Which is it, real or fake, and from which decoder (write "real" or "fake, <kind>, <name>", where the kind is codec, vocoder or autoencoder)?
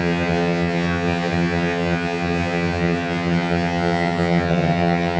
fake, vocoder, HiFi-GAN